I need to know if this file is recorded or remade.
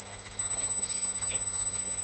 remade